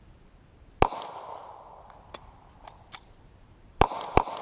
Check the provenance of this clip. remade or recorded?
recorded